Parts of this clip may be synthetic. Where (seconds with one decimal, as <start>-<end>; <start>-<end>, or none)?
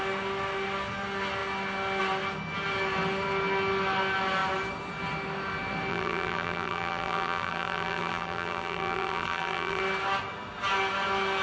5.9-9.8